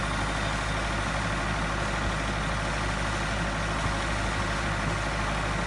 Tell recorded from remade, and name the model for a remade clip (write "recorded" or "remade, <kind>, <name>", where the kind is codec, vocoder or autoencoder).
recorded